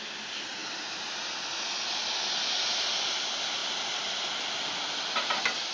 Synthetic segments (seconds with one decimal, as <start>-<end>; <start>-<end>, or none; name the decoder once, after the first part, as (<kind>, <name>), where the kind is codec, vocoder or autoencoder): none

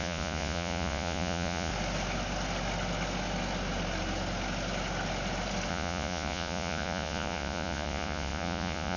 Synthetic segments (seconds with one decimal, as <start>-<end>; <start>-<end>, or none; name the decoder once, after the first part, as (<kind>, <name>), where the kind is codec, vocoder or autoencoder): 0.0-1.7 (vocoder, Vocos); 5.7-9.0